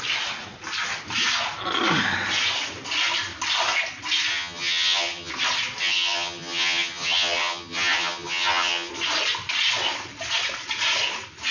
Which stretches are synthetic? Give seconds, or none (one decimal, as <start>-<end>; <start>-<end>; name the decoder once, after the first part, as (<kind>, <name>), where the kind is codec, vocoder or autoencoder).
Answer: 4.3-5.3 (vocoder, HiFi-GAN); 5.8-8.9